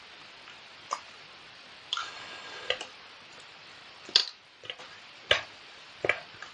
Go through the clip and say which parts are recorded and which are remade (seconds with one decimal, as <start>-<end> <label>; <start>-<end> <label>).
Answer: 0.0-2.0 recorded; 2.0-2.7 remade; 2.7-6.5 recorded